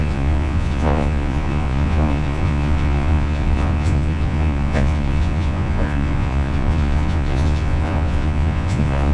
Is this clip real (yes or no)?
no